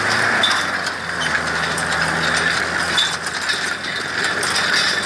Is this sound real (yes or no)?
yes